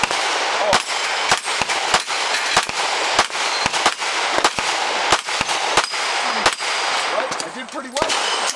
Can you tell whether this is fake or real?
real